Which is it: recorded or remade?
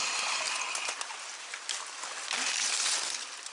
recorded